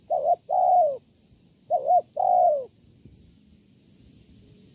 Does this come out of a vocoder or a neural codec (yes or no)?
no